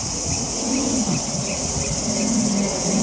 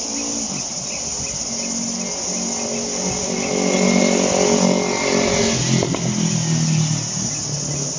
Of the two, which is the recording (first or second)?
second